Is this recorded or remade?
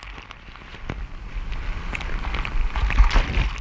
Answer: recorded